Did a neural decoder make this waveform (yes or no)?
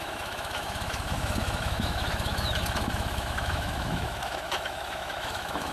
yes